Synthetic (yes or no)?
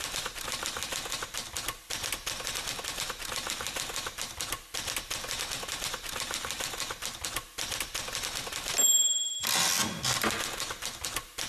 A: no